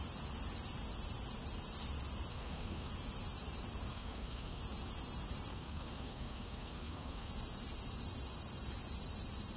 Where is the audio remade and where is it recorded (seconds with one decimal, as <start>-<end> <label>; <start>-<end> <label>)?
0.0-2.3 recorded; 2.3-2.9 remade; 2.9-3.9 recorded; 3.9-4.6 remade; 4.6-5.5 recorded; 5.5-7.3 remade; 7.3-9.6 recorded